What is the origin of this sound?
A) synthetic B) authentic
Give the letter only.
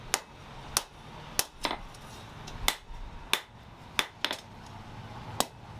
B